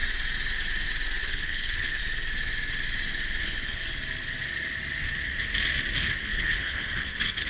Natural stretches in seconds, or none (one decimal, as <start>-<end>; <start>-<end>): 0.0-1.2; 2.0-3.4; 3.8-6.0